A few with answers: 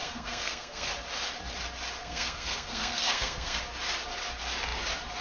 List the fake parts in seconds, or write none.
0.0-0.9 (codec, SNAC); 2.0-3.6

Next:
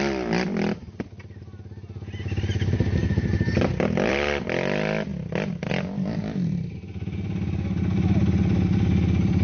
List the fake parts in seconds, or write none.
none

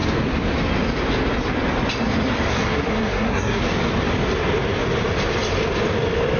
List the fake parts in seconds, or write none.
2.5-3.6 (codec, SNAC)

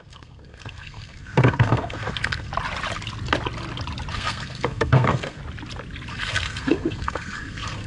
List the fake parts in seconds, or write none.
0.0-2.5 (codec, SNAC); 4.1-5.4; 6.1-7.9

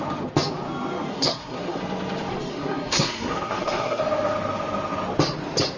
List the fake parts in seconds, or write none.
1.1-1.8 (codec, SNAC); 2.5-4.0

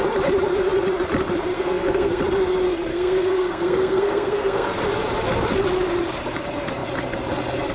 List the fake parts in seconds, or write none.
1.5-2.2 (codec, SNAC); 2.9-4.8